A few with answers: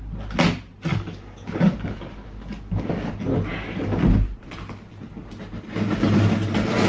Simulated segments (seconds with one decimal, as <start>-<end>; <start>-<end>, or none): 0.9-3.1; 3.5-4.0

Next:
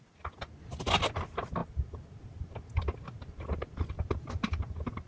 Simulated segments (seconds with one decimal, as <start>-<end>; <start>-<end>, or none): none

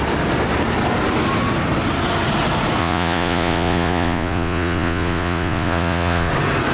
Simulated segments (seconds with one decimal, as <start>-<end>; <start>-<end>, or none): 2.8-6.3

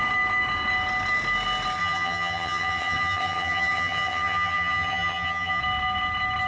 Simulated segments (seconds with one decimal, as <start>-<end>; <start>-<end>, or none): 1.8-5.6

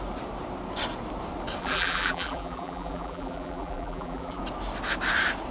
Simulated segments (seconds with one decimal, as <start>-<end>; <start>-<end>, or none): 1.6-4.4

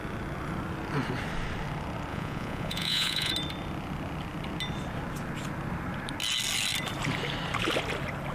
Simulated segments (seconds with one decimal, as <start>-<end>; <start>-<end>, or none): 2.1-3.3